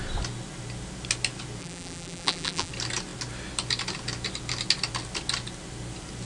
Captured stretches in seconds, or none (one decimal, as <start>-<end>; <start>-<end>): 0.0-1.6; 2.7-6.2